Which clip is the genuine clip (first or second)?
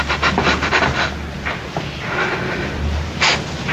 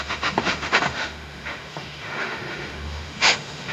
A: first